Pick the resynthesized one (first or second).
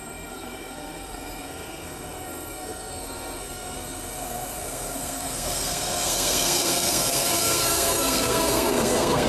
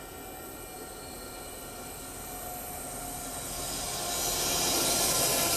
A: first